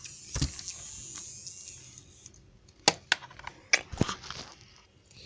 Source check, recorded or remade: recorded